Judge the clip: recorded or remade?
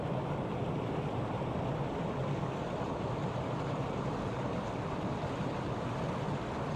recorded